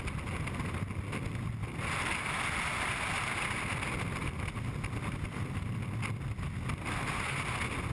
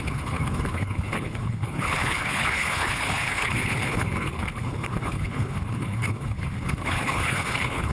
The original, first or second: first